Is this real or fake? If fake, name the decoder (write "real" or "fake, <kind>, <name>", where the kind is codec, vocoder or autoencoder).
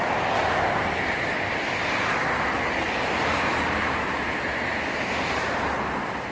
real